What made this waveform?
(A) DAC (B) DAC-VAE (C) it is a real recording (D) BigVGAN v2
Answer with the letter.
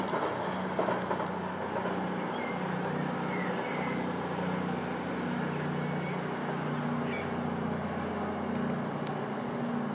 C